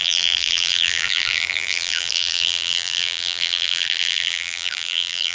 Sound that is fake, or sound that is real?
fake